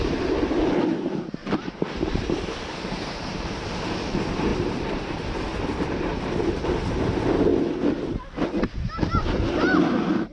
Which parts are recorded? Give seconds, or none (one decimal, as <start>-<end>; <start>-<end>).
7.5-9.4